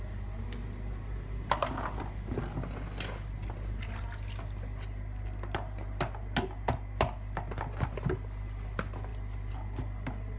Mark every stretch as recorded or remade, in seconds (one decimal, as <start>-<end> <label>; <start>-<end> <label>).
0.0-10.4 recorded